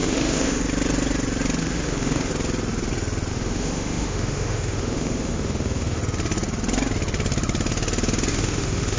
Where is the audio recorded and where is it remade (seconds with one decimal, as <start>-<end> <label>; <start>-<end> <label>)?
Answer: 0.0-0.6 remade; 0.6-1.6 recorded; 1.6-2.3 remade; 2.3-3.3 recorded; 3.3-6.0 remade; 6.0-8.3 recorded; 8.3-9.0 remade